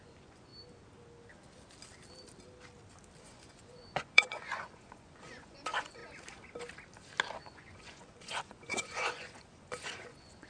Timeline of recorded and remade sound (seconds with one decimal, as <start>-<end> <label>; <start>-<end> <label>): 0.0-0.5 remade; 0.5-3.2 recorded; 3.2-6.0 remade; 6.0-7.4 recorded; 7.4-10.5 remade